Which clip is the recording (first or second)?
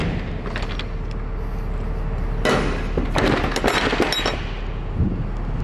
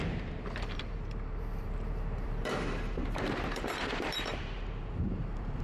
first